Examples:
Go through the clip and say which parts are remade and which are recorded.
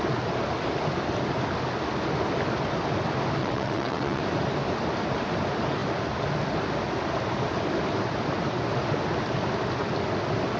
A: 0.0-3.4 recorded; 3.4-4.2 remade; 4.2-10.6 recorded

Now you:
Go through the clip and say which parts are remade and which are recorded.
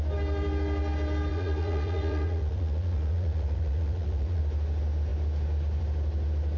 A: 0.0-1.3 recorded; 1.3-4.4 remade; 4.4-6.6 recorded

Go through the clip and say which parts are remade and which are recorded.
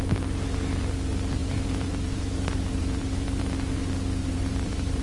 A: 0.0-1.4 recorded; 1.4-3.4 remade; 3.4-4.2 recorded; 4.2-5.0 remade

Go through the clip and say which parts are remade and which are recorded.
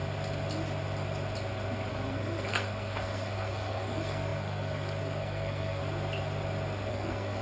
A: 0.0-1.9 recorded; 1.9-5.8 remade; 5.8-6.9 recorded; 6.9-7.4 remade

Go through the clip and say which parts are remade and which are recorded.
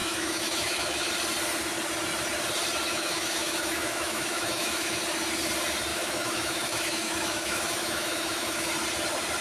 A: 0.0-1.1 remade; 1.1-2.9 recorded; 2.9-5.0 remade; 5.0-5.9 recorded; 5.9-8.7 remade; 8.7-9.4 recorded